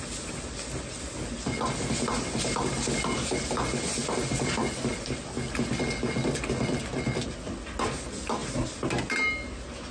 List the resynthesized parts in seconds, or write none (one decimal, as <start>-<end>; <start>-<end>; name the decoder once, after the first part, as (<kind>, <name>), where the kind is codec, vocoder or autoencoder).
none